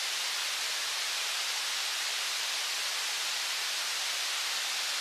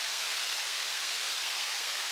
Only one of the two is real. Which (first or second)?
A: first